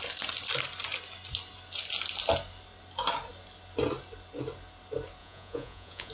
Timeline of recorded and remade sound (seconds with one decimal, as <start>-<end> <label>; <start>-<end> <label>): 0.0-5.2 recorded; 5.2-6.1 remade